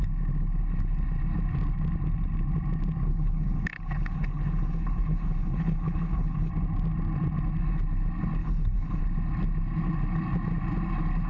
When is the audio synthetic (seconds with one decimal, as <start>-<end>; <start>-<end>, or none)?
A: 3.1-6.5; 8.4-9.0